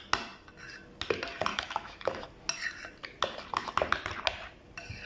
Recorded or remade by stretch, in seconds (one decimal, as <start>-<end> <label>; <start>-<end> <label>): 0.0-1.5 recorded; 1.5-2.3 remade; 2.3-5.1 recorded